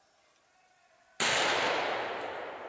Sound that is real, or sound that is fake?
real